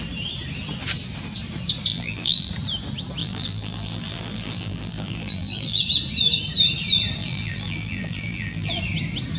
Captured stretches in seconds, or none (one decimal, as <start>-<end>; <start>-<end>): 0.0-1.9; 2.5-3.2; 5.8-7.2; 8.8-9.4